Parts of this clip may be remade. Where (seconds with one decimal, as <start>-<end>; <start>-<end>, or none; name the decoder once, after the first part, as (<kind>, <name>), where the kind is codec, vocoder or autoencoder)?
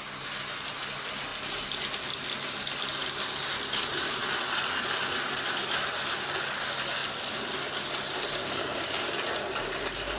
8.4-9.1 (codec, DAC)